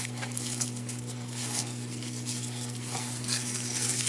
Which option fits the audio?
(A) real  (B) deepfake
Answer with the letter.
B